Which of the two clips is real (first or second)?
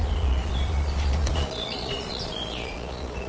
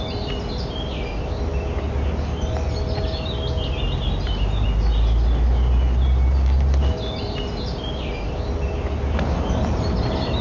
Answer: second